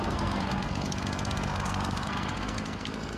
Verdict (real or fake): fake